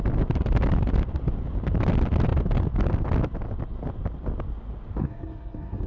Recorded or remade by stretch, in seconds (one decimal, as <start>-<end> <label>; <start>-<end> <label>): 0.0-5.0 recorded; 5.0-5.9 remade